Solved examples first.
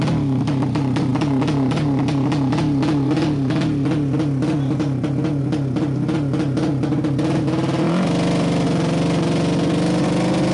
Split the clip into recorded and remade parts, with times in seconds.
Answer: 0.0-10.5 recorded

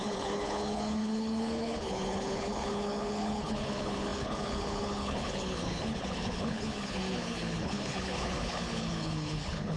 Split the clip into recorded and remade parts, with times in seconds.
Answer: 0.0-9.8 remade

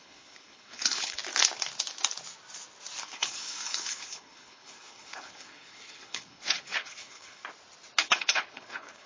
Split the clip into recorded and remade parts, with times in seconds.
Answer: 0.0-1.2 remade; 1.2-3.0 recorded; 3.0-7.4 remade; 7.4-8.0 recorded; 8.0-9.1 remade